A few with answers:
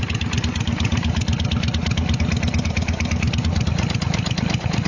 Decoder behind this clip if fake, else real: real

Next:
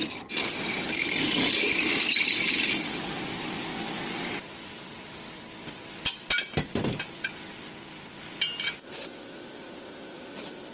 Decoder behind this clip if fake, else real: real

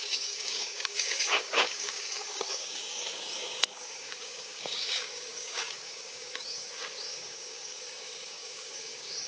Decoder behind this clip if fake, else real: fake, codec, DAC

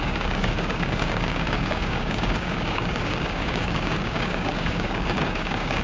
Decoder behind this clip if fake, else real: fake, codec, DAC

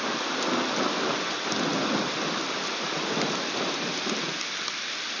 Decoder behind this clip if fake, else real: real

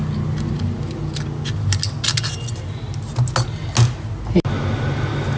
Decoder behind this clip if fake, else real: real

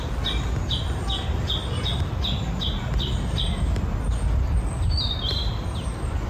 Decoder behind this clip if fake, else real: real